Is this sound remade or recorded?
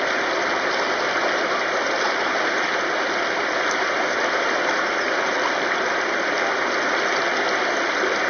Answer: recorded